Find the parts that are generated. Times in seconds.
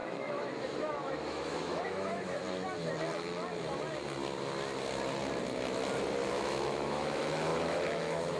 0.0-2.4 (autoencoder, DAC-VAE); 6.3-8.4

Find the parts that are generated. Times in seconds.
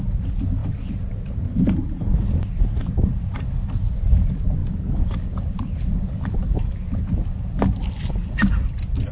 none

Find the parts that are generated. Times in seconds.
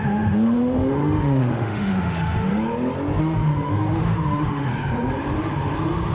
0.0-2.5 (autoencoder, DAC-VAE); 3.2-4.7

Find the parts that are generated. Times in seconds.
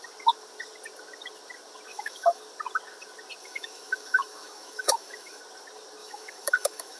1.9-2.4 (autoencoder, DAC-VAE); 3.4-5.4; 6.0-7.0